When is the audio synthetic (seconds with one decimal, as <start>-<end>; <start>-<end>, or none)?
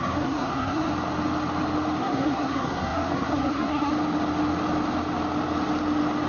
0.0-0.9; 2.0-3.9